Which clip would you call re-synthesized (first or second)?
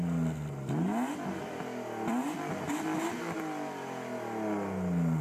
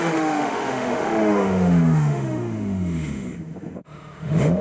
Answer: second